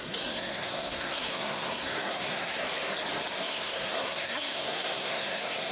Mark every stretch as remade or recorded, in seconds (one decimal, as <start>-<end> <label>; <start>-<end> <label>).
0.0-2.6 remade; 2.6-3.4 recorded; 3.4-5.7 remade